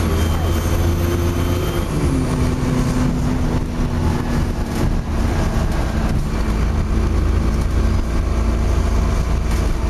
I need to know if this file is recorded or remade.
recorded